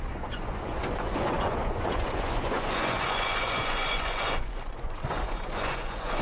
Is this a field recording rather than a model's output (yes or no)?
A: no